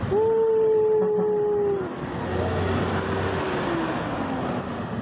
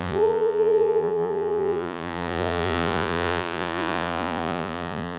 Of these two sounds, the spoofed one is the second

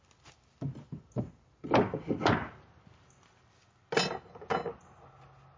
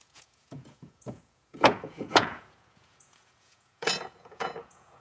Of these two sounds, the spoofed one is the second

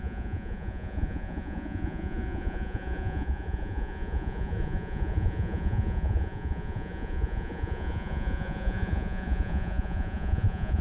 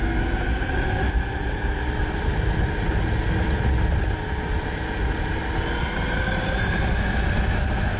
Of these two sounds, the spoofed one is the first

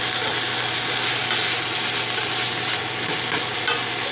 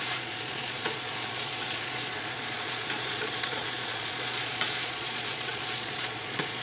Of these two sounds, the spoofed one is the second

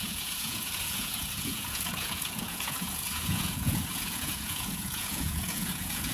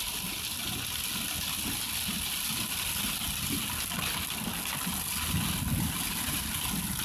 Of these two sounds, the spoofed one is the first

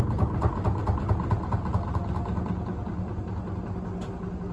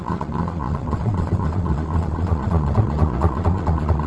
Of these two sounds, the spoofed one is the second